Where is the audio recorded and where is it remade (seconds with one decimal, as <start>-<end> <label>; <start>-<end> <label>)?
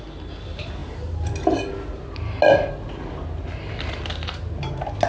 0.0-5.1 recorded